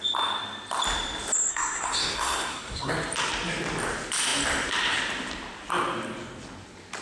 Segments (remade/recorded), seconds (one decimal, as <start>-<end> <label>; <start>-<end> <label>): 0.0-1.5 recorded; 1.5-2.9 remade; 2.9-7.0 recorded